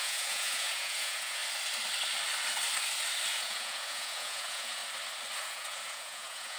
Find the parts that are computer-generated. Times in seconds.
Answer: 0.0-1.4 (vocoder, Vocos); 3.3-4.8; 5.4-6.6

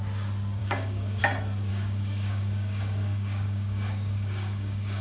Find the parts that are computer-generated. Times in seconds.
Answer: 0.6-1.2 (codec, DAC); 1.7-5.0

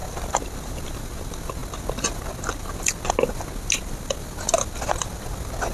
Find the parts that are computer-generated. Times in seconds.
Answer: none

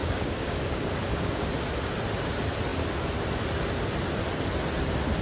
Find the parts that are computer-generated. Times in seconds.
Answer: 0.0-1.5 (codec, DAC)

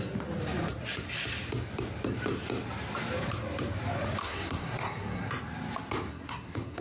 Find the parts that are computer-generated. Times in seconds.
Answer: 4.2-5.3 (codec, SNAC); 6.1-6.8

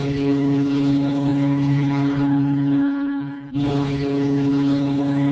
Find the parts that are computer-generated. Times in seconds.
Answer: 0.0-5.3 (codec, HILCodec)